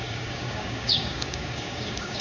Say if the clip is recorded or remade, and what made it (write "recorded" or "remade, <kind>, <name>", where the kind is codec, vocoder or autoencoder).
remade, codec, DAC